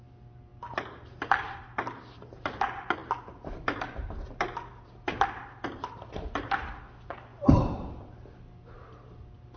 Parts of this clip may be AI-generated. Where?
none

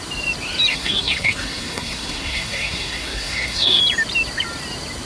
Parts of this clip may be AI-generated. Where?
0.7-3.8 (codec, SNAC)